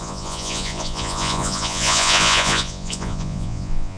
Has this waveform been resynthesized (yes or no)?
yes